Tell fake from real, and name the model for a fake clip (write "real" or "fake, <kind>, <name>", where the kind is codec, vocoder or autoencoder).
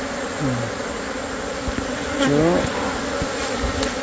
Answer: real